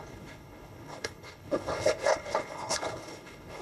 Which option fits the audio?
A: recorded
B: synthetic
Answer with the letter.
B